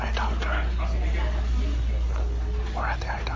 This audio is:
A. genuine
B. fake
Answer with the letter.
A